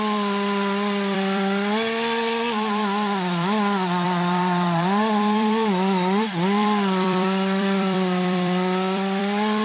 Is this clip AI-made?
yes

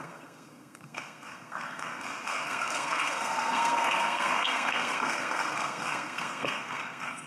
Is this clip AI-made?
yes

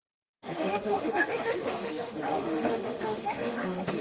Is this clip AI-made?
yes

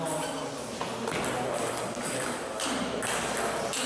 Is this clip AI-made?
no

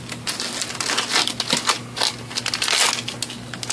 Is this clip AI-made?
no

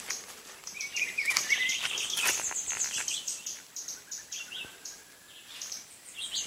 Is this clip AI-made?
yes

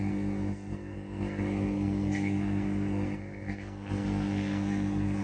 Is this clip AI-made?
yes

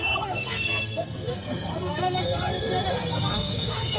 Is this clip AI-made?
yes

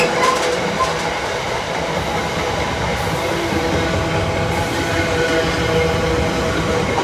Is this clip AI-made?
no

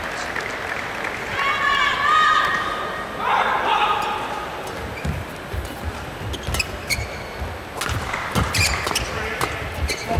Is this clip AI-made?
no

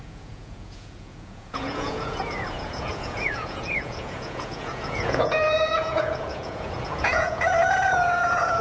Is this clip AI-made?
yes